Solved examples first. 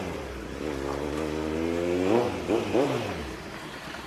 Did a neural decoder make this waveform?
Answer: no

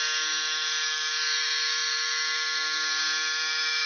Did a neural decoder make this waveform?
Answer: yes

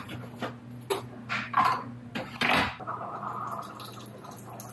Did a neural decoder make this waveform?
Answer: no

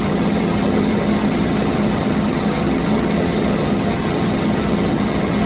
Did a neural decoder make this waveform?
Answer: yes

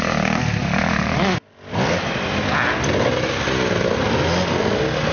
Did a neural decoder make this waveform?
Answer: no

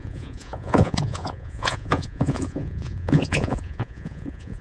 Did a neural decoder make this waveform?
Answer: yes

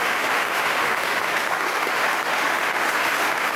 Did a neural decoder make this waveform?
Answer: yes